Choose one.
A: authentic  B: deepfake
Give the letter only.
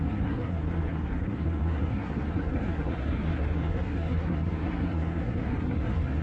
B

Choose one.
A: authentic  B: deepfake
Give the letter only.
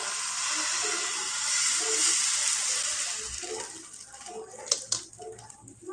A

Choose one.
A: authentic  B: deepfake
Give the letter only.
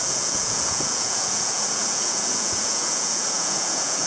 B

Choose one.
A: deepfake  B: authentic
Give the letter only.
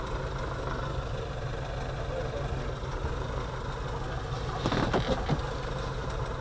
B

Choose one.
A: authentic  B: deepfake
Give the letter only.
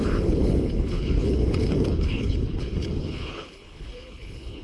B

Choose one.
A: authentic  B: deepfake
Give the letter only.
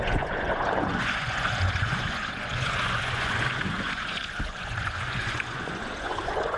B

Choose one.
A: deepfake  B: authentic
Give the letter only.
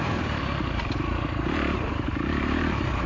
A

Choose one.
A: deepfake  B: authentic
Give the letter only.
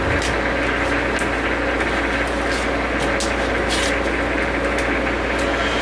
B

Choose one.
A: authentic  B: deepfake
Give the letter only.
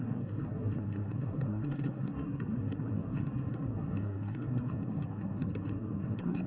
B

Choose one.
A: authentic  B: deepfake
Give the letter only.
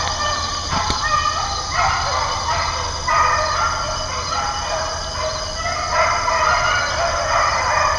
A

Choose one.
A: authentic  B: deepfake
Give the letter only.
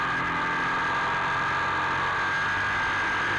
A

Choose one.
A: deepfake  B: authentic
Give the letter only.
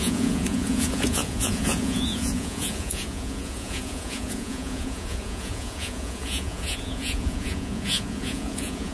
A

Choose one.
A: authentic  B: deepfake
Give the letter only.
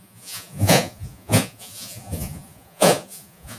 B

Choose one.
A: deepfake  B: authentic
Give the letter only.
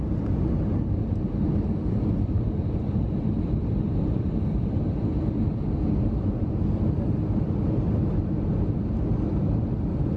B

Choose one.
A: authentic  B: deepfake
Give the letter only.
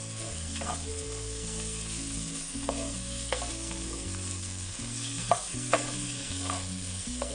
B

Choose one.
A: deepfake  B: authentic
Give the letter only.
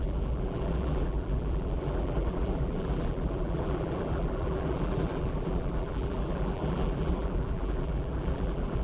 A